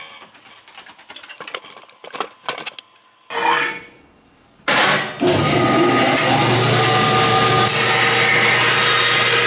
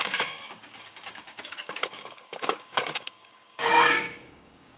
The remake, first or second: second